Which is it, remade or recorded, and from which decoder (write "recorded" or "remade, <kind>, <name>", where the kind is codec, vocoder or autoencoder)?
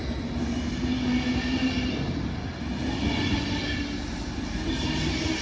recorded